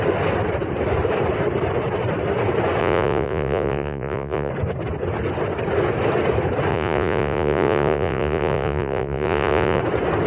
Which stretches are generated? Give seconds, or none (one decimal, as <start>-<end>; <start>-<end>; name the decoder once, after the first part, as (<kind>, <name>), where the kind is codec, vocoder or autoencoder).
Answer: 2.8-4.5 (vocoder, Vocos); 6.7-9.8